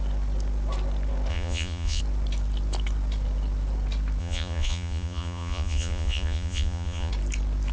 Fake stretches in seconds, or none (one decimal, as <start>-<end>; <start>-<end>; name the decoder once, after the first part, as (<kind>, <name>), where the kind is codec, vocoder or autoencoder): 1.3-2.0 (vocoder, Vocos); 4.2-7.1

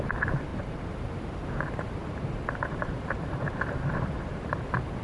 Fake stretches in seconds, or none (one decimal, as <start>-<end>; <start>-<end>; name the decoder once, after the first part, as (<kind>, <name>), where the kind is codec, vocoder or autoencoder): 0.5-1.1 (vocoder, BigVGAN v2); 2.0-4.6

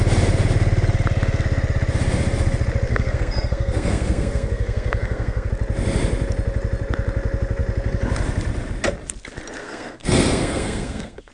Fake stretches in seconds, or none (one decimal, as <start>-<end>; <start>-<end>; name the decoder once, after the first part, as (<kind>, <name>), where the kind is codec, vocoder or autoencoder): 2.9-5.5 (codec, SNAC); 9.6-11.3

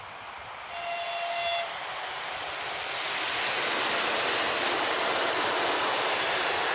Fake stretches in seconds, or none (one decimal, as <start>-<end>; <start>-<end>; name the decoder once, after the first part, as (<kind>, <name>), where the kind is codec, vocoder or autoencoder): none

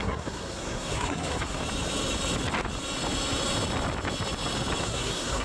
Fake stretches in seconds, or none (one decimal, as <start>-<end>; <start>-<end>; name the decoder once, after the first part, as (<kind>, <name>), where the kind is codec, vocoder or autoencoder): 0.0-1.6 (codec, SNAC); 4.8-5.4

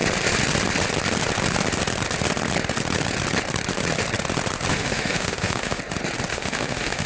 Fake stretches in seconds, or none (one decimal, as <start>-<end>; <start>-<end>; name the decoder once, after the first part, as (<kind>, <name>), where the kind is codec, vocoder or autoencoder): 4.7-5.8 (autoencoder, DAC-VAE); 6.3-7.1

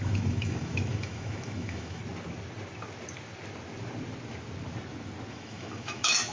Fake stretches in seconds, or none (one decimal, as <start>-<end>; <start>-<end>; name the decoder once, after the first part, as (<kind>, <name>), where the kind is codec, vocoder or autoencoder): 0.0-2.0 (autoencoder, DAC-VAE); 5.3-6.3